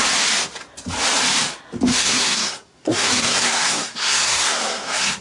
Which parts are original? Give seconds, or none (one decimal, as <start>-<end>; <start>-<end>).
0.0-1.9